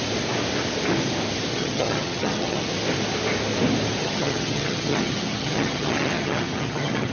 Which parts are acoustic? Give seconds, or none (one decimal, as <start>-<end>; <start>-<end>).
0.0-1.5; 2.7-4.0